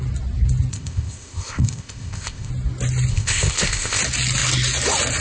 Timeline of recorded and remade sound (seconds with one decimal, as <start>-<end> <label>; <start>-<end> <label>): 0.0-0.7 recorded; 0.7-2.5 remade; 2.5-3.1 recorded; 3.1-4.0 remade; 4.0-5.2 recorded